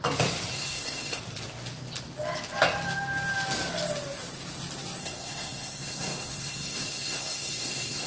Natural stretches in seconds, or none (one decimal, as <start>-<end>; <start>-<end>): 0.0-0.5; 1.2-5.0